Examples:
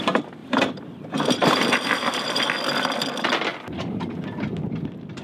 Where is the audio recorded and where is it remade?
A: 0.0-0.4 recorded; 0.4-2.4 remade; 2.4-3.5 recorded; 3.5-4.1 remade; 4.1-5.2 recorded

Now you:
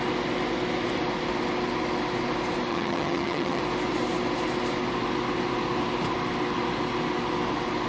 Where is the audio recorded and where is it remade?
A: 0.0-2.7 recorded; 2.7-3.6 remade; 3.6-7.9 recorded

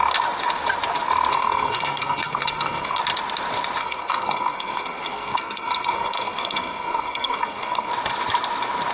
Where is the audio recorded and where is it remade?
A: 0.0-1.3 recorded; 1.3-3.0 remade; 3.0-3.8 recorded; 3.8-7.9 remade; 7.9-8.9 recorded

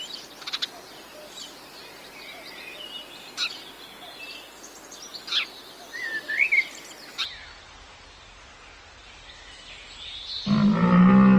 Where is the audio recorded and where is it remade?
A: 0.0-11.4 recorded

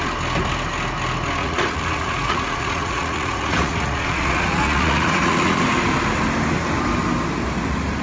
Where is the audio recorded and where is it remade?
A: 0.0-1.4 recorded; 1.4-5.6 remade; 5.6-8.0 recorded

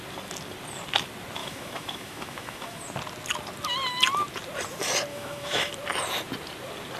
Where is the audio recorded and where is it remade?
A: 0.0-1.4 recorded; 1.4-2.8 remade; 2.8-5.1 recorded; 5.1-5.7 remade; 5.7-7.0 recorded

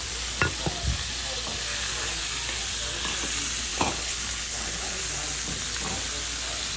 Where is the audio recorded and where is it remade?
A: 0.0-3.7 recorded; 3.7-5.0 remade; 5.0-6.8 recorded